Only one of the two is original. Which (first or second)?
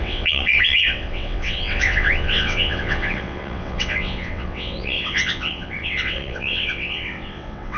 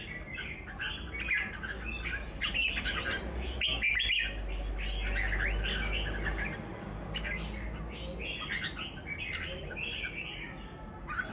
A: second